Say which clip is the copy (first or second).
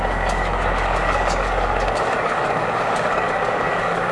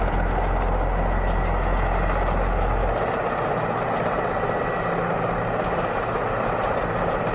first